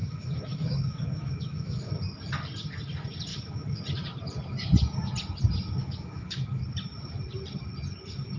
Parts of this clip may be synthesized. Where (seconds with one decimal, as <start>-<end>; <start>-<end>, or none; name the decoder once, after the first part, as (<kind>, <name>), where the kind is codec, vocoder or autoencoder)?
0.0-1.9 (autoencoder, DAC-VAE); 3.3-3.8; 5.8-6.6